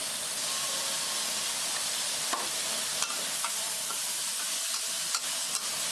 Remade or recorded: recorded